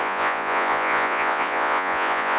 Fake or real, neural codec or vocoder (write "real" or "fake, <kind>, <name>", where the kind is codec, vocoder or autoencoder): fake, vocoder, Vocos